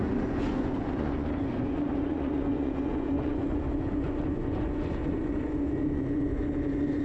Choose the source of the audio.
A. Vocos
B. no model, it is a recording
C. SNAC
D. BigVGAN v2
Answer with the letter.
A